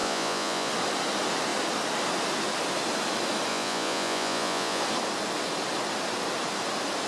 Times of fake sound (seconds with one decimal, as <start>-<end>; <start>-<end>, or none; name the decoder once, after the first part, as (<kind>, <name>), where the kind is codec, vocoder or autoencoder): 0.0-0.7 (vocoder, Vocos); 3.5-4.8